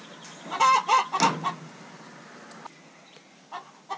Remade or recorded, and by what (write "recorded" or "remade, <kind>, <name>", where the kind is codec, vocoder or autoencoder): recorded